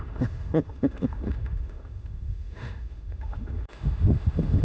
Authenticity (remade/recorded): remade